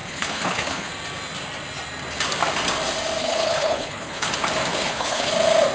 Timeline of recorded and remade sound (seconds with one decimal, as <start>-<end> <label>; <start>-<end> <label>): 0.0-0.9 remade; 0.9-3.2 recorded; 3.2-4.3 remade; 4.3-4.7 recorded; 4.7-5.3 remade; 5.3-5.7 recorded